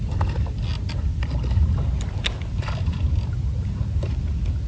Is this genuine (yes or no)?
yes